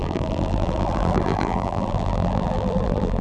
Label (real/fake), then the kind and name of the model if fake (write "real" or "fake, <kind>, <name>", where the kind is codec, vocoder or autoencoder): fake, vocoder, BigVGAN v2